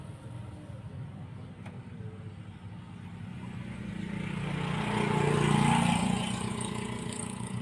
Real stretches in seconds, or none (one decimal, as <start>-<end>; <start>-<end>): 0.0-3.3; 3.9-6.0